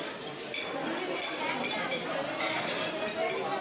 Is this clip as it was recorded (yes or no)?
yes